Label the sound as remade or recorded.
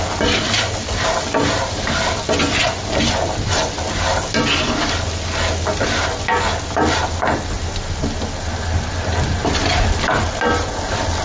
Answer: recorded